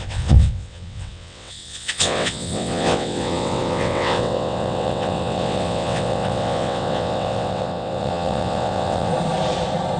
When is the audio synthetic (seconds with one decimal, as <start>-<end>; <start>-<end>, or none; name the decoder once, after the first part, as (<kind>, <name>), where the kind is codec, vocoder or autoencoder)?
0.0-9.1 (vocoder, WaveNeXt)